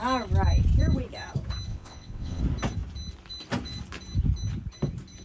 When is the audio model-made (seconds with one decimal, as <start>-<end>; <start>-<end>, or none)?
1.7-2.4